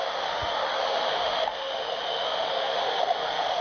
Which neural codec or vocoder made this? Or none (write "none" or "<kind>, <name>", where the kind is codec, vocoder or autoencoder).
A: autoencoder, DAC-VAE